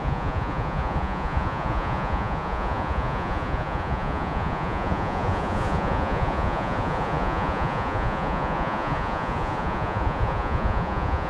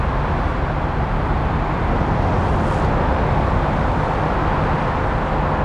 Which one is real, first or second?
second